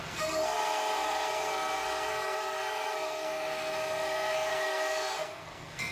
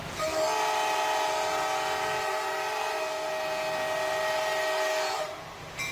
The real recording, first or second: second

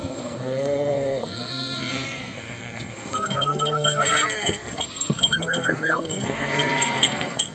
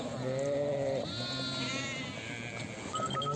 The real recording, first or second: second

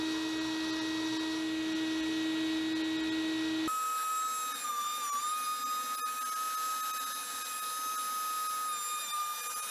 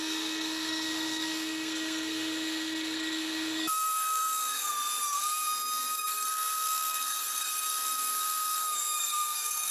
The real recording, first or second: first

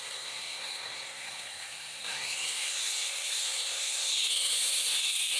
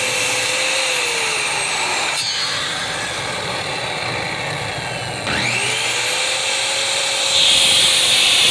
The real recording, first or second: second